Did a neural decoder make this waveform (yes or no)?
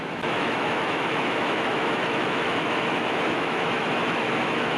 yes